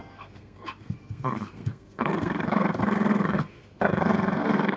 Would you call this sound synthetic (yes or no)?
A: yes